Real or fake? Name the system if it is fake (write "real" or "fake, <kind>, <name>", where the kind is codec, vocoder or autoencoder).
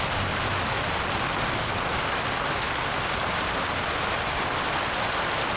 real